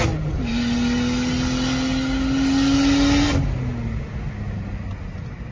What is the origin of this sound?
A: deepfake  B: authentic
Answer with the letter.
B